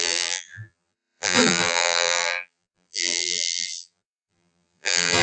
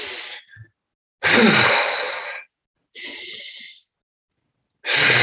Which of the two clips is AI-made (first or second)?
first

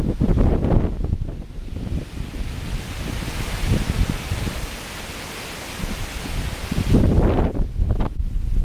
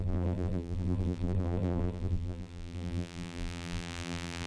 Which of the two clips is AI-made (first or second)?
second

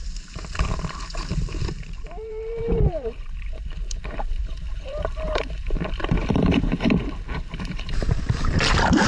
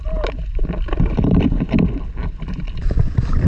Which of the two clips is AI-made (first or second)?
first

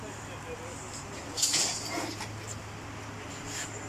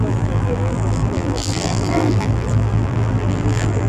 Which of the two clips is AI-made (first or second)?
second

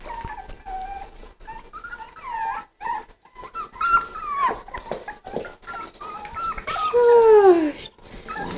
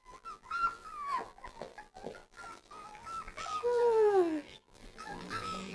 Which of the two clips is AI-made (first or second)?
second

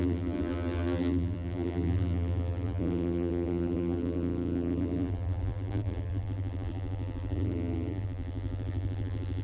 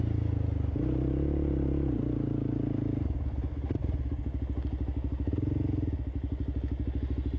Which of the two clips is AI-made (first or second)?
first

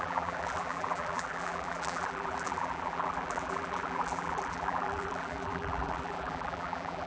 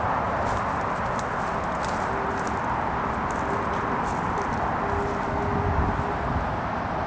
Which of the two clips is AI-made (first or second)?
first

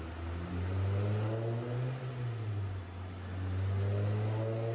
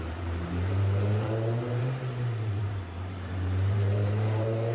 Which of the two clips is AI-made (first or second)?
second